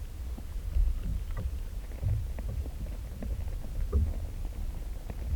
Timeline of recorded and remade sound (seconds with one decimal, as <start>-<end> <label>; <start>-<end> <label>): 0.0-5.4 recorded